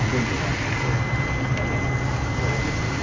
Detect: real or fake real